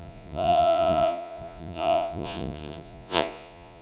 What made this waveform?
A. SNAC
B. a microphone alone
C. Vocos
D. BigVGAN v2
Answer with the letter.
C